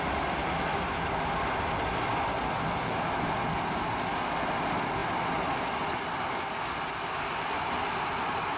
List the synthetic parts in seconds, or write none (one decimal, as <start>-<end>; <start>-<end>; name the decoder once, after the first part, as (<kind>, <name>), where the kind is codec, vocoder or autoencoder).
none